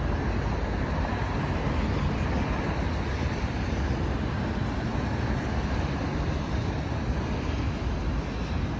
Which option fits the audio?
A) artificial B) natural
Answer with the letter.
B